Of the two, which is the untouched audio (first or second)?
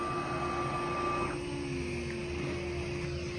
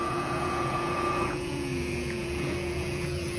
first